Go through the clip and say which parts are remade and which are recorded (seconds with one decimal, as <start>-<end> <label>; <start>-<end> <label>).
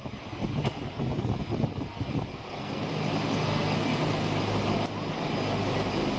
0.0-2.3 recorded; 2.3-2.9 remade; 2.9-3.5 recorded; 3.5-4.3 remade; 4.3-6.2 recorded